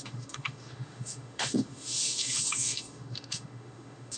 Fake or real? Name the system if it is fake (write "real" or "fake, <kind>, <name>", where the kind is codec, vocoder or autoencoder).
fake, autoencoder, DAC-VAE